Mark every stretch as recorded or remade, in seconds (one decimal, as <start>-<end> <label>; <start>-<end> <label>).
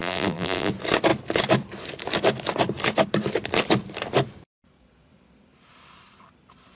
0.0-0.7 remade; 0.7-6.8 recorded